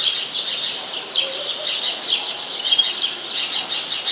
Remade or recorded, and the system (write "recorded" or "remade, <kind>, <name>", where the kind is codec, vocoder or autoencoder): recorded